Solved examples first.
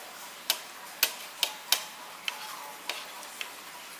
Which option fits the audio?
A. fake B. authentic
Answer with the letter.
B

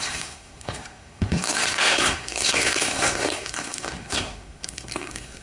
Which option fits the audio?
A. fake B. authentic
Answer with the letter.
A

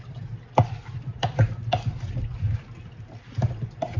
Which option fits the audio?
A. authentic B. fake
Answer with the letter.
A